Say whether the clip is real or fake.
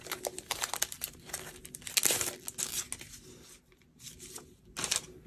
real